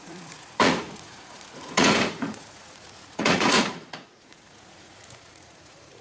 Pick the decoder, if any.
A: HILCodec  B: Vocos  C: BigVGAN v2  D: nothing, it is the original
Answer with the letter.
B